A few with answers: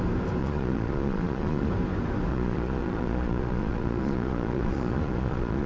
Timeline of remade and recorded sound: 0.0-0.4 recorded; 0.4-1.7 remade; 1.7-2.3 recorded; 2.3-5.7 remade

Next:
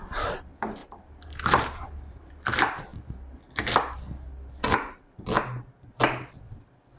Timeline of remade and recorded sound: 0.0-0.8 recorded; 0.8-2.3 remade; 2.3-7.0 recorded

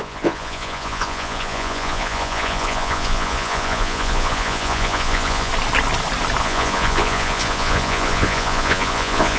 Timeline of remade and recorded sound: 0.0-5.5 remade; 5.5-6.4 recorded; 6.4-9.4 remade

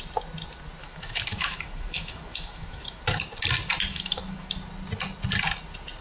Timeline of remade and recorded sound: 0.0-0.8 recorded; 0.8-3.0 remade; 3.0-3.9 recorded; 3.9-4.5 remade; 4.5-6.0 recorded

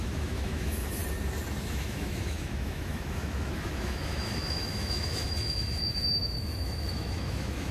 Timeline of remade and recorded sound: 0.0-1.0 remade; 1.0-1.6 recorded; 1.6-7.7 remade

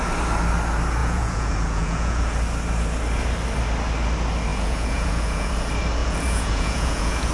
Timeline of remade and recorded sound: 0.0-1.0 recorded; 1.0-2.2 remade; 2.2-4.5 recorded; 4.5-5.5 remade; 5.5-6.0 recorded; 6.0-7.3 remade

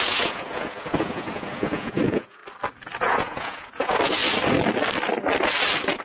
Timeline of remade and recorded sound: 0.0-2.4 remade; 2.4-3.0 recorded; 3.0-4.2 remade; 4.2-6.0 recorded

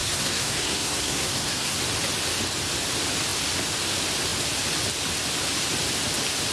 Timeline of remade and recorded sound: 0.0-1.8 remade; 1.8-6.5 recorded